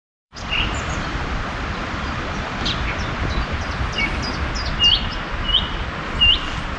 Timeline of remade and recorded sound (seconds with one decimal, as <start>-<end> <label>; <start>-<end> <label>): 0.0-4.0 remade; 4.0-6.8 recorded